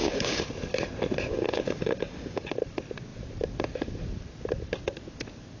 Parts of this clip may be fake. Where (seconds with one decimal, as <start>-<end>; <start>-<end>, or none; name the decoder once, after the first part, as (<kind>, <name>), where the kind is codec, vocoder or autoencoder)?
0.0-0.5 (codec, DAC); 1.3-2.5